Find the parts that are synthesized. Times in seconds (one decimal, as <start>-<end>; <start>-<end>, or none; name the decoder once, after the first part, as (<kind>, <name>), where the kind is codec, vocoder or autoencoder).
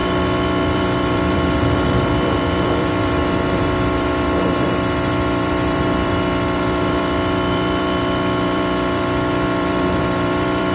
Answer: 0.6-10.7 (vocoder, BigVGAN v2)